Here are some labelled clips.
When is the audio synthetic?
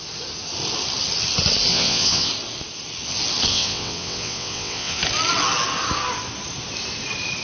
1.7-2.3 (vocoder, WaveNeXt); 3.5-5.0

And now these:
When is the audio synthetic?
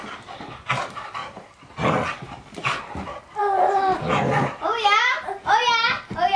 none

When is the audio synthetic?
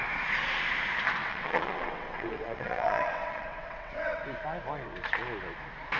1.2-4.2 (vocoder, WaveNeXt)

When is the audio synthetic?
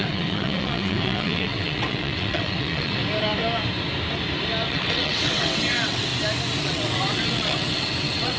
0.0-3.0 (vocoder, WaveNeXt); 4.7-6.1; 6.6-8.4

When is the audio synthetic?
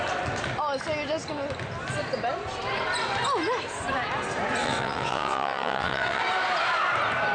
4.6-6.2 (vocoder, WaveNeXt)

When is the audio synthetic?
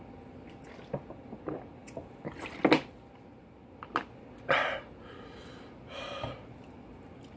none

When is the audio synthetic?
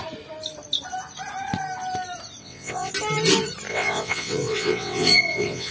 2.4-2.9 (vocoder, WaveNeXt); 3.7-5.7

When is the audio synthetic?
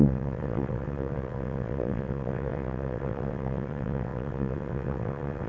0.0-5.5 (vocoder, WaveNeXt)